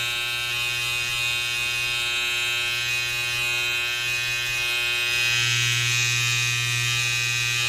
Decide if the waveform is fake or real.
real